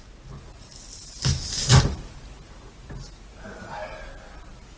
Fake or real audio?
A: real